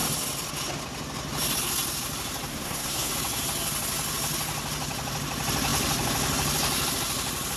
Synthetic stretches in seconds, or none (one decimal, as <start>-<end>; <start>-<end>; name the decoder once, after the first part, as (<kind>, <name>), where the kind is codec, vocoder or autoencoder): 2.5-3.1 (codec, SNAC)